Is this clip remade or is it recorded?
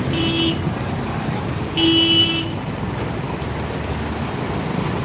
recorded